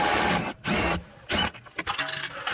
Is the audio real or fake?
real